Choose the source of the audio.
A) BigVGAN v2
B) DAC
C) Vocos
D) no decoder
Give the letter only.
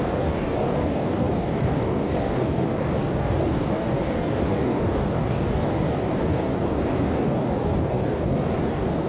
B